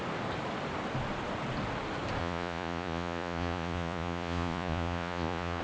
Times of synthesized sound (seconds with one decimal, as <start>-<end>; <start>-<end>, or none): 2.2-5.6